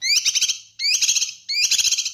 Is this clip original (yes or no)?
yes